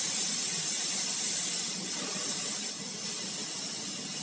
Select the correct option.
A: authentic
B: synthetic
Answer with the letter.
A